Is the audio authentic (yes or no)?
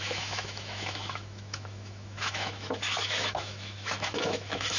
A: no